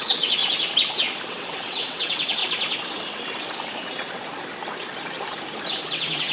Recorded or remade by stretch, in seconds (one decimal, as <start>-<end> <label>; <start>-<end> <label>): 0.0-0.4 remade; 0.4-1.3 recorded; 1.3-2.4 remade; 2.4-5.8 recorded; 5.8-6.3 remade